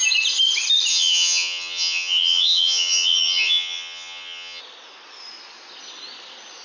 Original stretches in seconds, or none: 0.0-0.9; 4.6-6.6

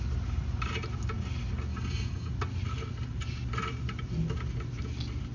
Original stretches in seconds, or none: 0.0-1.7; 2.3-5.3